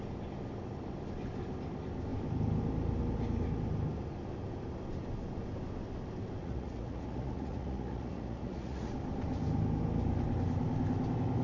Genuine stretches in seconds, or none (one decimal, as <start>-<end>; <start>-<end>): 0.0-6.4; 8.9-11.4